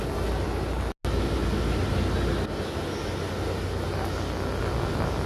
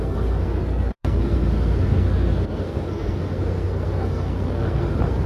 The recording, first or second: first